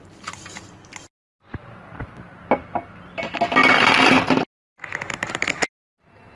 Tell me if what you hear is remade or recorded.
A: recorded